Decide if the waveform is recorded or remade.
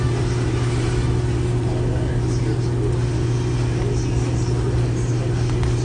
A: recorded